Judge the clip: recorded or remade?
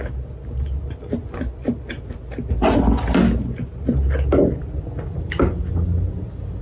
recorded